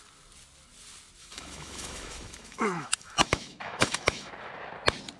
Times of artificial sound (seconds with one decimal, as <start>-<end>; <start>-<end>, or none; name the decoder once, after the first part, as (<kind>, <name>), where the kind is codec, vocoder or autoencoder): 1.2-4.3 (autoencoder, DAC-VAE)